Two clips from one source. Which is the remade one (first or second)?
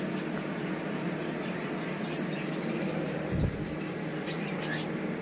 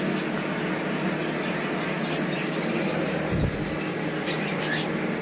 first